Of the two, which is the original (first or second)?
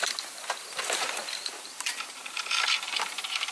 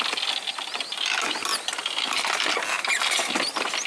second